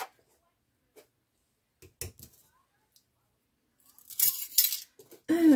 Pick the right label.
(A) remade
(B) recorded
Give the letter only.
B